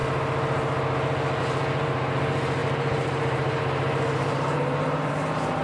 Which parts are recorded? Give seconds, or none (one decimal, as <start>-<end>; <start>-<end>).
0.0-1.4